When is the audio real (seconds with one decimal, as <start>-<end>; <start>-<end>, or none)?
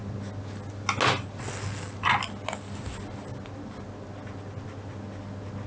0.0-5.7